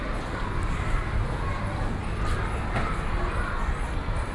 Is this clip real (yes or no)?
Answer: yes